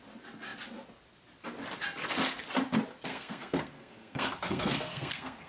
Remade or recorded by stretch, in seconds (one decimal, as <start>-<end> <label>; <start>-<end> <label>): 0.0-3.1 recorded; 3.1-5.5 remade